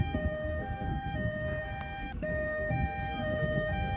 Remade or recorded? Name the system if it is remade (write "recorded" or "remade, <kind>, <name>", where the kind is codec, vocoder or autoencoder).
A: remade, codec, SNAC